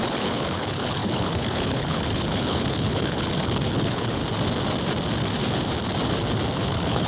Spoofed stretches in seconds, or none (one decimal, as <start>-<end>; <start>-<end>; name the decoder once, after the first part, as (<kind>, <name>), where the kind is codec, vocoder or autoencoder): 0.0-4.2 (codec, HILCodec); 6.6-7.1